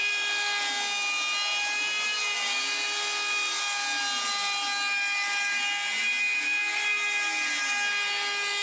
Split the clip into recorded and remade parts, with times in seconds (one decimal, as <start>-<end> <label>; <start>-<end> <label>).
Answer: 0.0-8.6 recorded